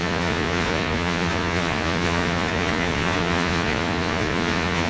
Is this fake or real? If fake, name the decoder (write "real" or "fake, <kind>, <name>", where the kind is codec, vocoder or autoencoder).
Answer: fake, vocoder, Vocos